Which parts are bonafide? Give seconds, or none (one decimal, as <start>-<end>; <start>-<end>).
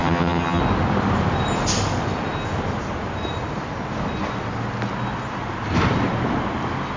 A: 0.6-7.0